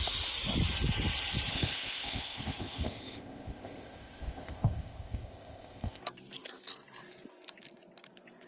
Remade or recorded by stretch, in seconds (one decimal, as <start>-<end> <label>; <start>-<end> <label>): 0.0-1.5 recorded; 1.5-6.0 remade; 6.0-8.5 recorded